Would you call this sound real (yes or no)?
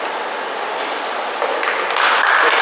yes